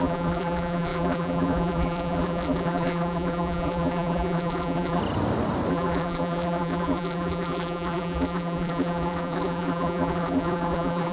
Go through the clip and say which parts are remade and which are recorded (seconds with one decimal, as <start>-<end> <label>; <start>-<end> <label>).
0.0-5.0 remade; 5.0-5.7 recorded; 5.7-11.1 remade